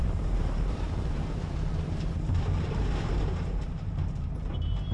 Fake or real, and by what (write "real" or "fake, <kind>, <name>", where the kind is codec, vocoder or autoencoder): fake, vocoder, BigVGAN v2